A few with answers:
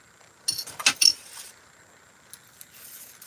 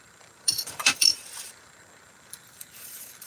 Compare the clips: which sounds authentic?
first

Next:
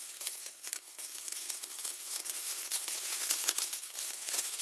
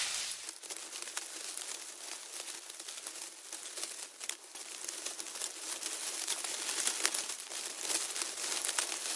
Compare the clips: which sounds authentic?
second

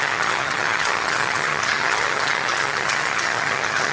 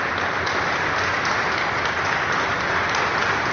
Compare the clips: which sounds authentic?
second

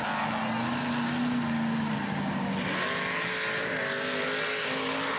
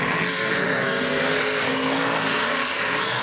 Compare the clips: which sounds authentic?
first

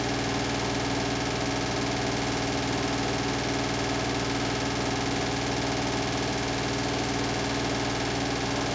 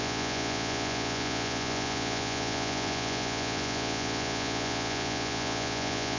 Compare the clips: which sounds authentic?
first